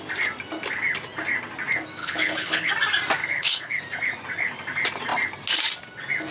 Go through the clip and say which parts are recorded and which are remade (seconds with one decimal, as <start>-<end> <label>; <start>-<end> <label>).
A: 0.0-2.0 recorded; 2.0-2.7 remade; 2.7-3.2 recorded; 3.2-3.8 remade; 3.8-6.3 recorded